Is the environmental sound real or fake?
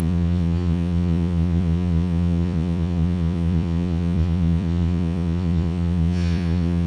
fake